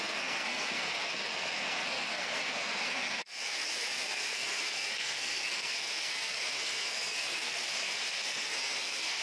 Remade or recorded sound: remade